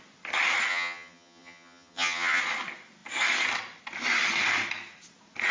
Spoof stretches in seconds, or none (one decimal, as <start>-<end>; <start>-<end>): 0.7-2.4